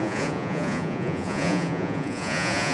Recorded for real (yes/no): no